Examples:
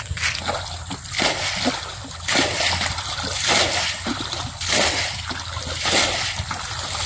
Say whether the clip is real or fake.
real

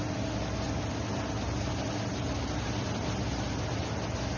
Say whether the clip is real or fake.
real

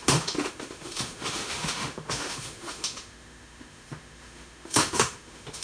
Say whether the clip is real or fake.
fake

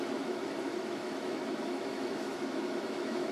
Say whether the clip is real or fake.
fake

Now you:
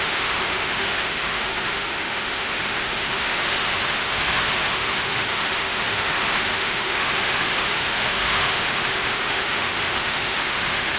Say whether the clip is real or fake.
fake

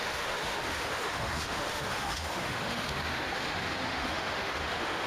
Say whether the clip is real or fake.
fake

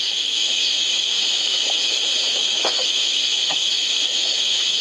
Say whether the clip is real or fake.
fake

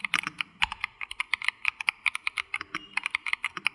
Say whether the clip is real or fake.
real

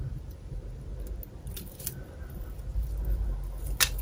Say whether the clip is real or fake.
real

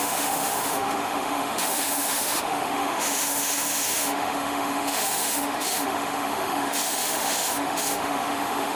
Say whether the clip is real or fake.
fake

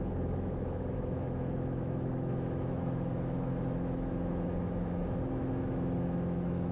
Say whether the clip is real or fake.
fake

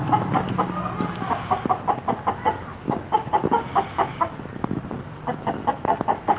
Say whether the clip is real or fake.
real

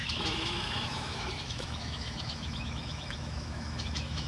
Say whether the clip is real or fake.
fake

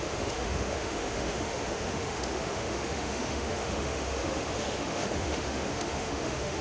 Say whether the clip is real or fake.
fake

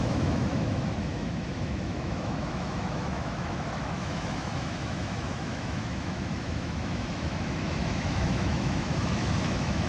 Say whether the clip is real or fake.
fake